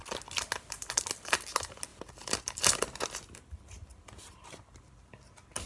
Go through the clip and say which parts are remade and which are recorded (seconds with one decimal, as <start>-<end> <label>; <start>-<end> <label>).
0.0-1.9 recorded; 1.9-5.3 remade; 5.3-5.7 recorded